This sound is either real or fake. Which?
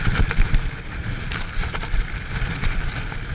real